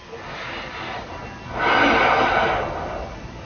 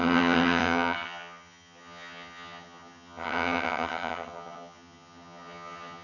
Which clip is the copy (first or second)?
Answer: second